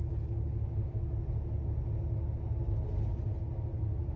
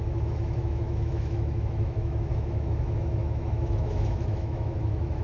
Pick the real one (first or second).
first